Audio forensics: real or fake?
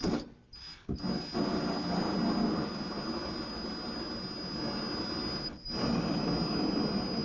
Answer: real